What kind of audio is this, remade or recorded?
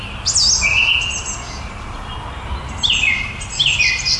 recorded